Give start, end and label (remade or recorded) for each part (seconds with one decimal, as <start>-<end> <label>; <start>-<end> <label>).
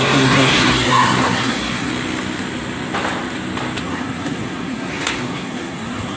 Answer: 0.0-1.9 remade; 1.9-3.8 recorded; 3.8-6.2 remade